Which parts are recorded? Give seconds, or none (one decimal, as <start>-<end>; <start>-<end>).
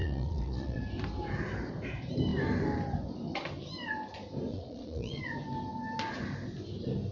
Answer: 0.8-4.5; 5.2-7.1